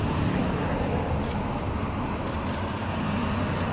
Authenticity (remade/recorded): recorded